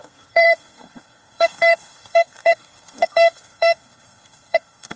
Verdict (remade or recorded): remade